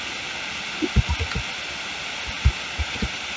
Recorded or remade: recorded